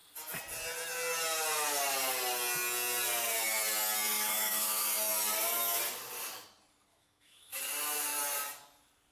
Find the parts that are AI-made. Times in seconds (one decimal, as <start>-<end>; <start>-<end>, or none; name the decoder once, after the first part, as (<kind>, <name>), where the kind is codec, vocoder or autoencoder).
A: 4.1-5.0 (autoencoder, DAC-VAE); 6.9-7.6